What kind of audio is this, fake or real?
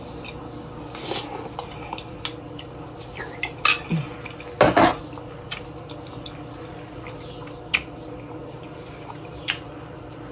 real